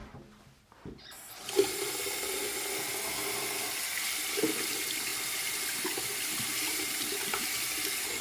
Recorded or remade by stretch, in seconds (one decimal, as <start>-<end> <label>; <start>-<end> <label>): 0.0-6.5 recorded; 6.5-7.6 remade; 7.6-8.2 recorded